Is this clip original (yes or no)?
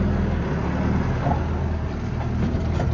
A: yes